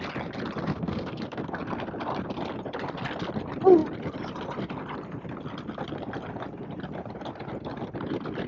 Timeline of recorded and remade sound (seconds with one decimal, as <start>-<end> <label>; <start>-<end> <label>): 0.0-0.7 recorded; 0.7-1.6 remade; 1.6-8.5 recorded